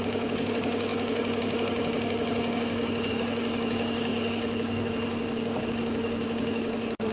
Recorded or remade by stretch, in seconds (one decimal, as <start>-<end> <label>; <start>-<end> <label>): 0.0-7.1 remade